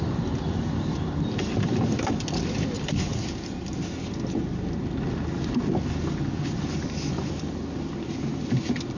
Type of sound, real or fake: real